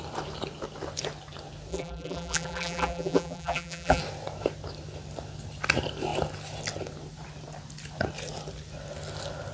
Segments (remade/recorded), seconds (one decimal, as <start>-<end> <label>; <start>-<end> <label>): 0.0-1.7 recorded; 1.7-4.0 remade; 4.0-9.5 recorded